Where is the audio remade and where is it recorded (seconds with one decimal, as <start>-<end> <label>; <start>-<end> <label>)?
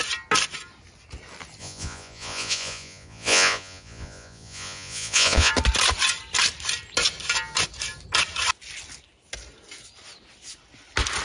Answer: 0.0-1.6 recorded; 1.6-5.5 remade; 5.5-11.2 recorded